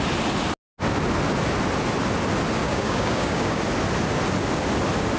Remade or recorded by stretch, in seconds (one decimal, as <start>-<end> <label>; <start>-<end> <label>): 0.0-2.6 recorded; 2.6-3.6 remade; 3.6-5.2 recorded